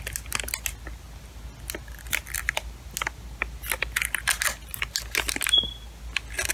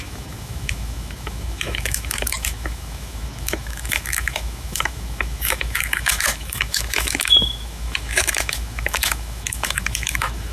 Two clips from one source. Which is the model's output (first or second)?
second